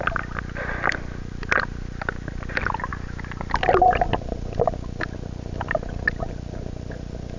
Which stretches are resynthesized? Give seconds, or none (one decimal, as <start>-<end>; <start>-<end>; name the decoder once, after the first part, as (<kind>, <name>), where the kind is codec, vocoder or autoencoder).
none